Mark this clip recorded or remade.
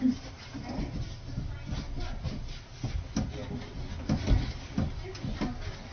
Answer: recorded